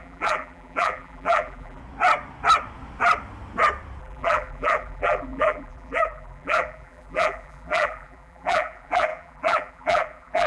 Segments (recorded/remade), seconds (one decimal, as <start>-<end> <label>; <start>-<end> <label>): 0.0-1.8 remade; 1.8-4.0 recorded; 4.0-10.5 remade